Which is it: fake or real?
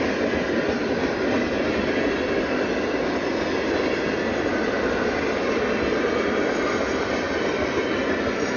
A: real